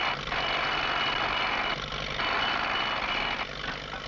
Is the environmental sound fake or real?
real